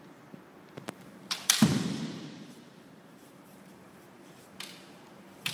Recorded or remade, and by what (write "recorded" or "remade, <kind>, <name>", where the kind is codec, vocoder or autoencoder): remade, vocoder, BigVGAN v2